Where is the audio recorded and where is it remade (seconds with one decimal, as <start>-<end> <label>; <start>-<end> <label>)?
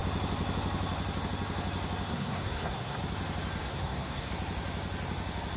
0.0-2.1 recorded; 2.1-3.0 remade; 3.0-3.6 recorded; 3.6-4.3 remade; 4.3-5.6 recorded